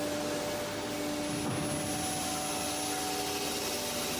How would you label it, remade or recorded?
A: recorded